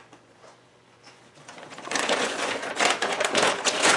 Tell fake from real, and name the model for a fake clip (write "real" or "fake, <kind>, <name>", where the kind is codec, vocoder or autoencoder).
fake, vocoder, Vocos